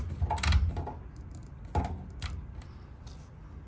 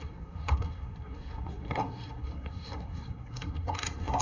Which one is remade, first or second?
second